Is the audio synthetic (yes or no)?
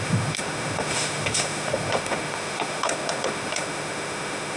yes